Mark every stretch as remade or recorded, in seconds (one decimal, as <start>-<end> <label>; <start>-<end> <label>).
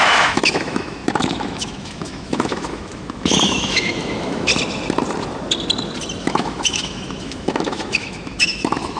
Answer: 0.0-4.5 remade; 4.5-6.2 recorded; 6.2-9.0 remade